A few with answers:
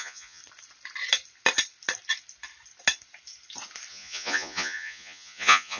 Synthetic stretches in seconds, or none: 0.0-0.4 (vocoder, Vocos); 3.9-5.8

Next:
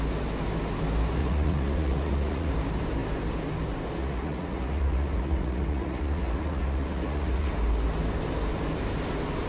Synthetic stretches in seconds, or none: 1.2-2.5 (vocoder, Vocos); 4.0-7.5

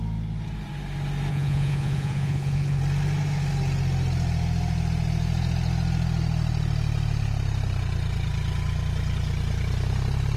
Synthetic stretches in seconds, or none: 1.3-2.8 (vocoder, Vocos)

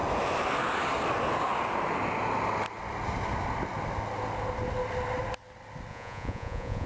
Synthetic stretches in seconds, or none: 5.9-6.9 (vocoder, Vocos)

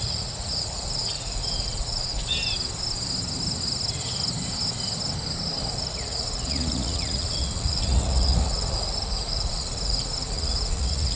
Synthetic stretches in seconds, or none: 0.0-2.3 (vocoder, Vocos); 5.7-11.2

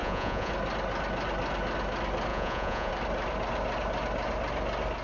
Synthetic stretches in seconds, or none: 0.0-0.5 (vocoder, Vocos); 2.3-2.9

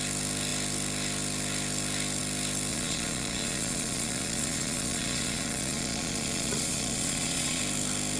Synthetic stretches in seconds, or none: 2.7-7.6 (vocoder, Vocos)